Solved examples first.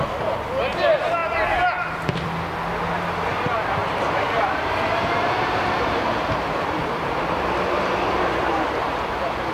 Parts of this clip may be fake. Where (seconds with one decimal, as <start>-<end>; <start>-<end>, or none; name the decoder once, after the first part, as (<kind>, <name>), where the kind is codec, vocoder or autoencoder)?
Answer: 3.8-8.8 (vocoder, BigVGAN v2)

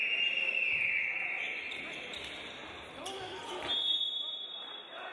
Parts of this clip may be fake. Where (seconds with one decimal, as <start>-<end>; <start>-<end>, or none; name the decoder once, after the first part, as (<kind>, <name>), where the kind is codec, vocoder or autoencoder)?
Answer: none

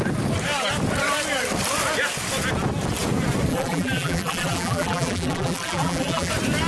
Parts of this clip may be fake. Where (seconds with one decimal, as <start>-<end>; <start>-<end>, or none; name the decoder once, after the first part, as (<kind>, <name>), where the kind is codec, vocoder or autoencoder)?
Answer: 3.5-6.3 (vocoder, BigVGAN v2)